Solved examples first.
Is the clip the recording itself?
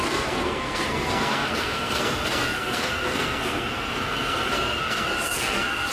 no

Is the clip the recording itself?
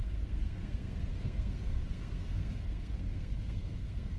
no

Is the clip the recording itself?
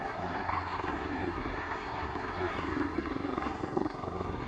no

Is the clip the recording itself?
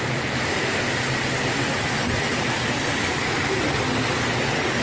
yes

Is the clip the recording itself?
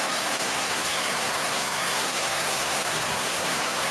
no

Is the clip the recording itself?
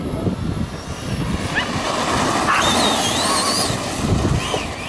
yes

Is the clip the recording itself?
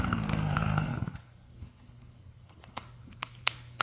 no